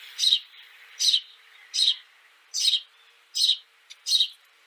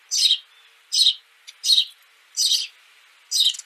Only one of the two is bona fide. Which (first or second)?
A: second